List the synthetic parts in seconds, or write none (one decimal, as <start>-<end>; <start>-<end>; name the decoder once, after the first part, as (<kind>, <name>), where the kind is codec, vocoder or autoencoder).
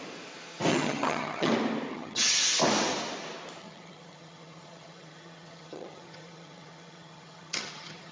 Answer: 0.7-1.5 (vocoder, HiFi-GAN); 1.9-2.4; 3.6-8.1